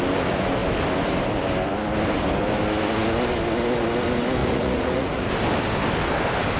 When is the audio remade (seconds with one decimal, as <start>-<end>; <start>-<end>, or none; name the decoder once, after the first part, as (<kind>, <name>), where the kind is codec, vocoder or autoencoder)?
4.4-5.3 (vocoder, Vocos)